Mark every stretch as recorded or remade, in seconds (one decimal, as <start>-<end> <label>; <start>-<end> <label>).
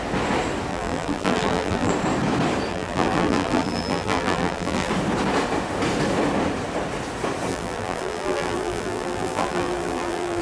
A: 0.0-0.7 recorded; 0.7-1.9 remade; 1.9-2.7 recorded; 2.7-4.9 remade; 4.9-7.5 recorded; 7.5-10.4 remade